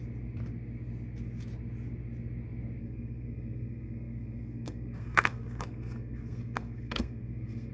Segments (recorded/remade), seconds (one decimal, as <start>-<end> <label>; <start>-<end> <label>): 0.0-2.8 recorded; 2.8-7.7 remade